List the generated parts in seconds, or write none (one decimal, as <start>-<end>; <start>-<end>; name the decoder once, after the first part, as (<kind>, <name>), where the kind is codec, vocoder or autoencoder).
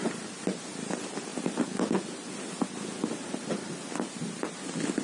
none